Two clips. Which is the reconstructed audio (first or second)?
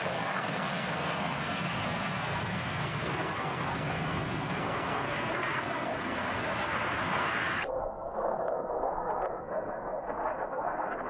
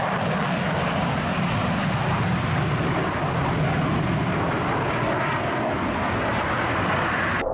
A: first